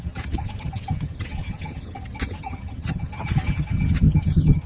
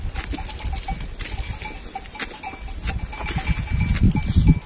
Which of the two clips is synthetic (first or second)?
first